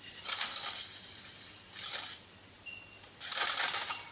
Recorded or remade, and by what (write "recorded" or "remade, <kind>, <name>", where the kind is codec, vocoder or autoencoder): recorded